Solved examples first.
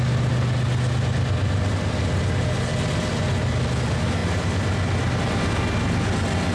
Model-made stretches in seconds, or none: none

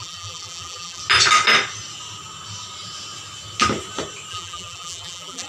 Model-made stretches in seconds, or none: 0.0-1.0; 4.3-5.5